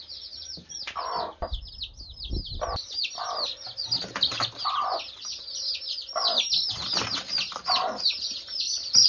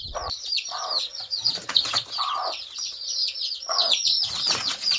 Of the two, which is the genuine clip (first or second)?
first